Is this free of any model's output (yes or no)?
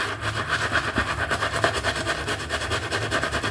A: yes